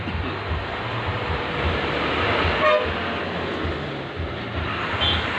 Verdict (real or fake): real